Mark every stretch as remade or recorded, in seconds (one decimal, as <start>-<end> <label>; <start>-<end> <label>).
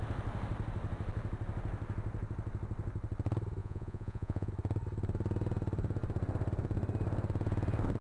0.0-3.6 recorded; 3.6-4.5 remade; 4.5-8.0 recorded